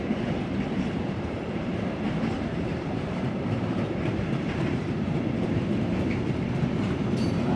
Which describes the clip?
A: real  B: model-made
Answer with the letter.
B